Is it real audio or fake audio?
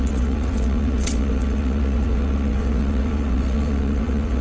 fake